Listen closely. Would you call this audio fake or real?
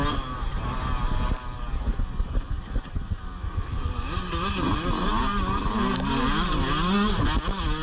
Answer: real